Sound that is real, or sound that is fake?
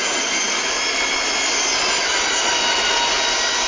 real